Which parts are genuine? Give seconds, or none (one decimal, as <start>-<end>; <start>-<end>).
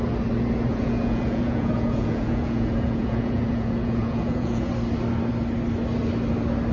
0.0-0.7; 4.7-6.7